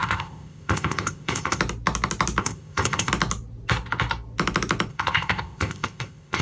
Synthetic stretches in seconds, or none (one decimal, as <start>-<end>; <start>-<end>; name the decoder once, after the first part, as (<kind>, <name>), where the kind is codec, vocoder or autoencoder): 0.0-1.6 (codec, ZipCodec); 2.4-3.1; 4.9-6.4